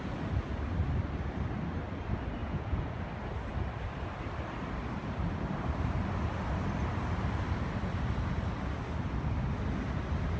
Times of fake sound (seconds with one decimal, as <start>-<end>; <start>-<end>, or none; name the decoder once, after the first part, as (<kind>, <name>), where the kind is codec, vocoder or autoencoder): 2.4-3.0 (vocoder, Vocos)